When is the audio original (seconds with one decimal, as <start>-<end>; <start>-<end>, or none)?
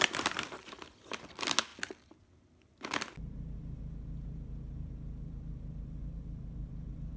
0.0-7.2